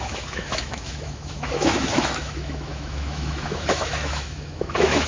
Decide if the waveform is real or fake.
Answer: fake